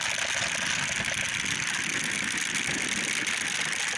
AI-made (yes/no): no